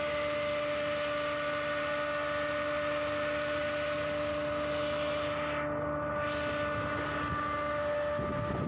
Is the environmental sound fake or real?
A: real